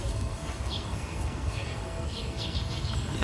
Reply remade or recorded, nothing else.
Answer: remade